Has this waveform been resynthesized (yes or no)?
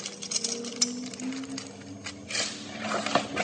no